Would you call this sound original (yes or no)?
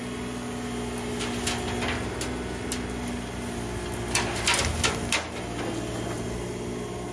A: yes